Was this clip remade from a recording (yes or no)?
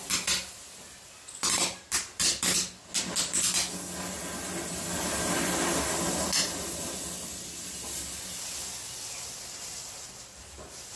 no